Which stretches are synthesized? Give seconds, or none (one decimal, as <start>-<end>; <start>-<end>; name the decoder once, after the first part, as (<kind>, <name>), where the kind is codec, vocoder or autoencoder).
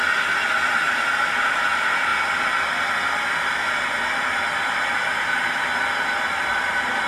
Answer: 0.7-2.1 (vocoder, BigVGAN v2); 6.4-7.1